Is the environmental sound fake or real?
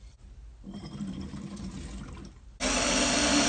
real